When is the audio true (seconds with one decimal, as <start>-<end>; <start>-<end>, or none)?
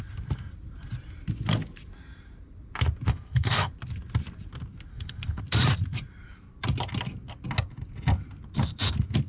0.0-3.1; 3.7-4.9; 5.4-9.3